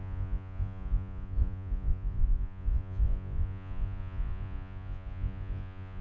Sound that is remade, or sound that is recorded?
remade